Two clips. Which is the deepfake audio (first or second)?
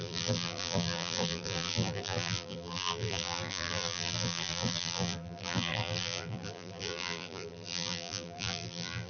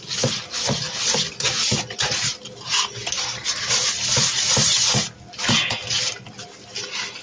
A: first